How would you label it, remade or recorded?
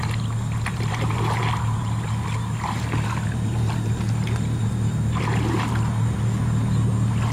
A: recorded